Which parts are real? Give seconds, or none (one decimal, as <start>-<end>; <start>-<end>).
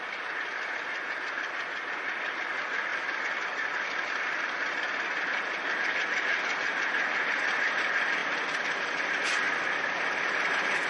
0.0-2.9; 5.8-8.2; 10.5-10.9